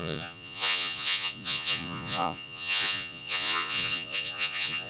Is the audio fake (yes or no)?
yes